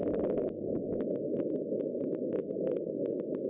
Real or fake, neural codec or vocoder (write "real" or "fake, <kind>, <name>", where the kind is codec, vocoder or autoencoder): fake, autoencoder, DAC-VAE